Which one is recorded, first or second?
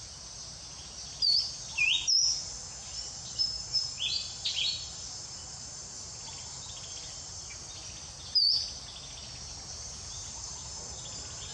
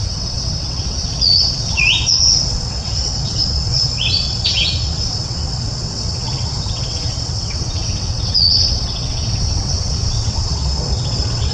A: first